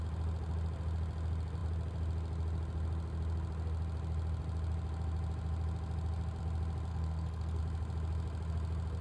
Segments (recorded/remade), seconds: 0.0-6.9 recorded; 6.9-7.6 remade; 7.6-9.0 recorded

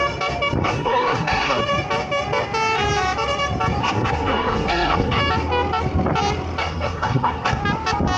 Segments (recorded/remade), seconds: 0.0-0.6 recorded; 0.6-1.6 remade; 1.6-3.8 recorded; 3.8-5.2 remade; 5.2-6.6 recorded; 6.6-7.6 remade; 7.6-8.2 recorded

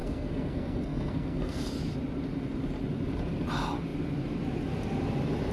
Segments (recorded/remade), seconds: 0.0-1.7 remade; 1.7-5.5 recorded

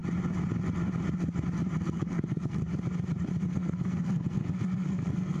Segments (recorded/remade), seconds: 0.0-1.9 recorded; 1.9-2.6 remade; 2.6-3.4 recorded; 3.4-5.4 remade

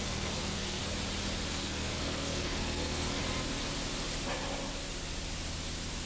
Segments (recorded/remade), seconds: 0.0-0.8 remade; 0.8-1.5 recorded; 1.5-3.2 remade; 3.2-6.1 recorded

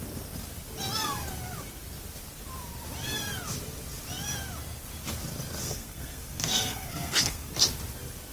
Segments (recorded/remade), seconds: 0.0-5.6 recorded; 5.6-7.5 remade; 7.5-8.3 recorded